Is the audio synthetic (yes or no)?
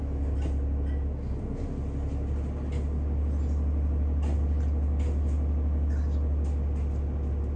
no